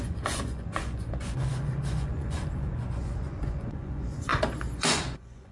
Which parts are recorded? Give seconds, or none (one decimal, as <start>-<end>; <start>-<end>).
none